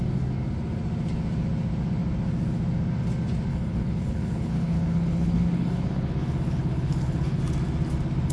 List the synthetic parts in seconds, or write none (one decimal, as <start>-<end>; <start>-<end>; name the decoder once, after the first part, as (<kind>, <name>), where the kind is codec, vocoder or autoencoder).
3.5-7.4 (codec, HILCodec)